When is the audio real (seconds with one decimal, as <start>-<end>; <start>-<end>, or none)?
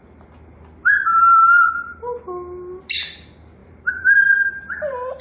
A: 0.0-3.6; 4.2-5.2